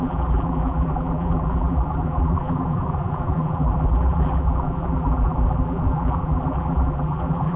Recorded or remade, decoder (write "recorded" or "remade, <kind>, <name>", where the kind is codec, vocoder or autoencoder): remade, vocoder, BigVGAN v2